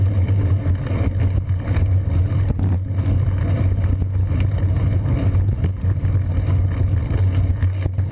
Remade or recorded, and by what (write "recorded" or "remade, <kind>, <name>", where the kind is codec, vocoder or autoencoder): recorded